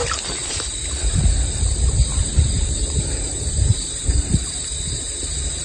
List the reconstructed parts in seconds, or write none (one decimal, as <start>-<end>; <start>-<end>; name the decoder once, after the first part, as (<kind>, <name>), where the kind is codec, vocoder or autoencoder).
2.0-5.6 (vocoder, BigVGAN v2)